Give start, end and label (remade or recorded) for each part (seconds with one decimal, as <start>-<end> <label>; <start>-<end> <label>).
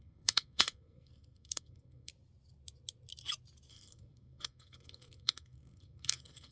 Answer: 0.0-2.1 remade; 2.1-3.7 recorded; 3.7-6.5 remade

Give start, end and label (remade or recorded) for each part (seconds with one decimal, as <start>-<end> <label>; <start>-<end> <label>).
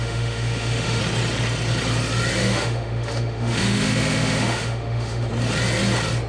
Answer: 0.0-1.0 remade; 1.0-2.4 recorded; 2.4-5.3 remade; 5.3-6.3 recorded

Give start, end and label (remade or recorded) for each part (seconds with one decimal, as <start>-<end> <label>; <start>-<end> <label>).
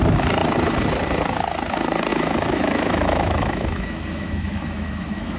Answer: 0.0-2.1 recorded; 2.1-5.4 remade